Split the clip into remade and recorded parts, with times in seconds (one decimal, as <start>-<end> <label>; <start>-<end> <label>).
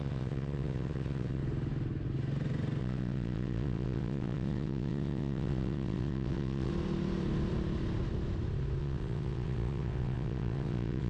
0.0-1.4 remade; 1.4-2.8 recorded; 2.8-6.7 remade; 6.7-8.8 recorded; 8.8-11.1 remade